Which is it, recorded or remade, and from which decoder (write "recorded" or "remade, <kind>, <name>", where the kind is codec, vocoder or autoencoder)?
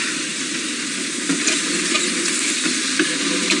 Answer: recorded